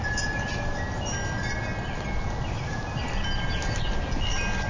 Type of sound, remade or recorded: recorded